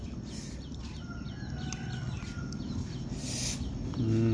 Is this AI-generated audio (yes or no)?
no